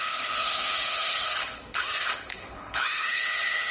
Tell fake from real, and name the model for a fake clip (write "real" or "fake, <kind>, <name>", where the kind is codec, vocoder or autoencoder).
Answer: fake, codec, HILCodec